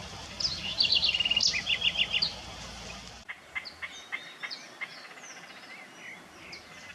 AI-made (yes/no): no